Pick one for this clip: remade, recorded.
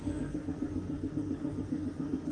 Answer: remade